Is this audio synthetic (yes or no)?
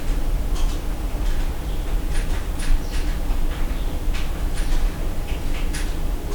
no